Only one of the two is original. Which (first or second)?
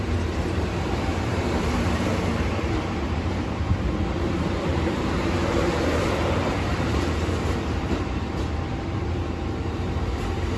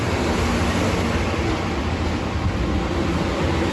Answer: second